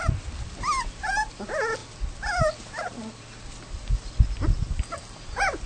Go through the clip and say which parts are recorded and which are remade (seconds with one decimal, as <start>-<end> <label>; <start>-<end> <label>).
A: 0.0-5.7 recorded